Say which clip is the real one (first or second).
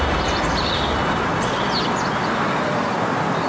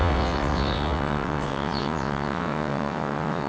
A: first